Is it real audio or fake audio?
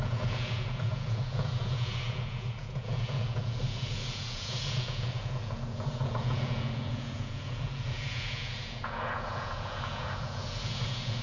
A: fake